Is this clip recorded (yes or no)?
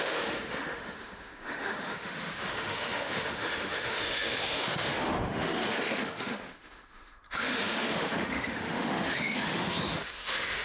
no